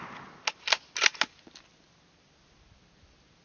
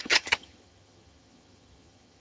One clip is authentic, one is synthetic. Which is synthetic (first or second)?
second